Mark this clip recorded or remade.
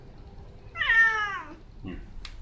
recorded